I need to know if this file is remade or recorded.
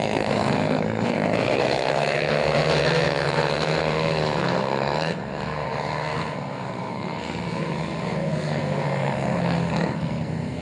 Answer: remade